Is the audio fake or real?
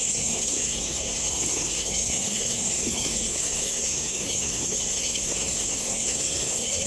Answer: fake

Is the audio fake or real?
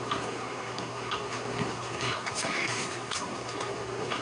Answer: fake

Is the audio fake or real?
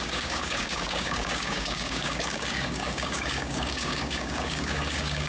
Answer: fake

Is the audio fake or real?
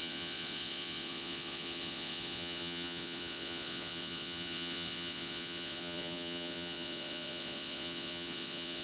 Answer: fake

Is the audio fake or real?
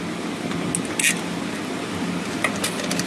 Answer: real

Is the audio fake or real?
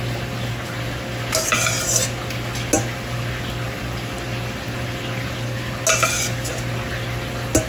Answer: real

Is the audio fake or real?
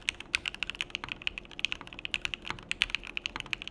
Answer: real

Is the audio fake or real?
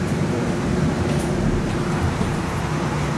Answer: fake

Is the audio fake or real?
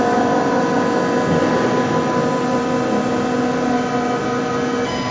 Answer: real